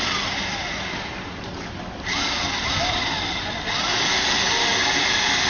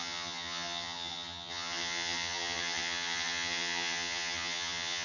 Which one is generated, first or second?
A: second